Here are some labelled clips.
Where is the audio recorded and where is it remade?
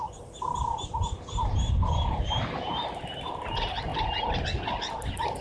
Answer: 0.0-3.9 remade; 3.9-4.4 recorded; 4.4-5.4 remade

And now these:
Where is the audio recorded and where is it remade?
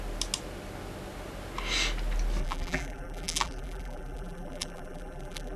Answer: 0.0-2.4 recorded; 2.4-5.6 remade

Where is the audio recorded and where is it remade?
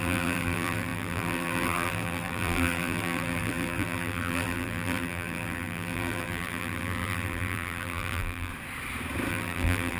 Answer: 0.0-8.5 remade; 8.5-9.3 recorded; 9.3-10.0 remade